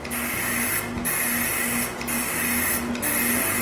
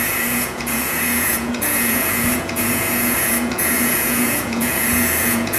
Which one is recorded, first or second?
first